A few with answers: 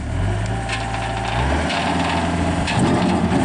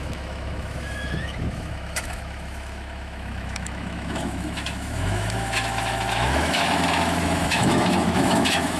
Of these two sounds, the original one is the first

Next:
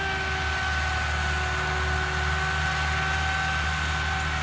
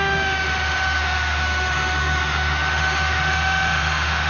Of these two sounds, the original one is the first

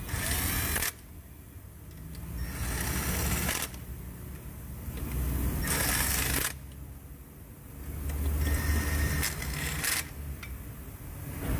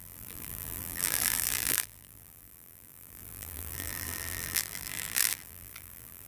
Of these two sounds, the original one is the first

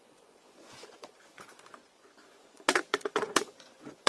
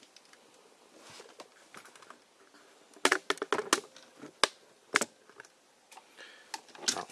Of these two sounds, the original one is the second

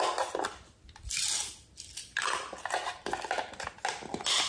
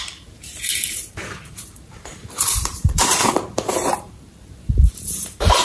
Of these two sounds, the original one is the first